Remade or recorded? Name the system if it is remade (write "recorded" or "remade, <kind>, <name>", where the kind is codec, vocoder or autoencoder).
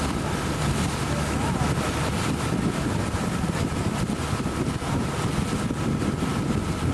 recorded